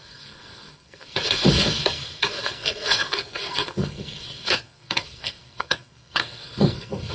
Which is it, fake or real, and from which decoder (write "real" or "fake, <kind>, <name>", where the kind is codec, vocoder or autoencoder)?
fake, codec, SNAC